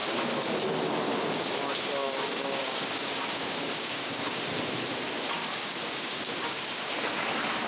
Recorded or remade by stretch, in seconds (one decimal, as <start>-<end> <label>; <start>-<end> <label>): 0.0-2.0 recorded; 2.0-4.4 remade; 4.4-5.4 recorded; 5.4-6.9 remade; 6.9-7.7 recorded